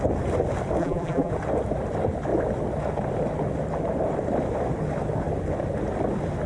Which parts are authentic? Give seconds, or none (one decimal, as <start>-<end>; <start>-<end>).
0.0-0.8; 1.3-6.5